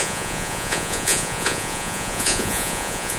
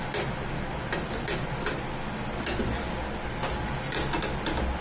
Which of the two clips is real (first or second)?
second